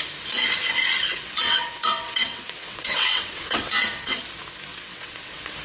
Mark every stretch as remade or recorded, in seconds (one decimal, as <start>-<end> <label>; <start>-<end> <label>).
0.0-1.1 recorded; 1.1-4.2 remade; 4.2-4.7 recorded; 4.7-5.6 remade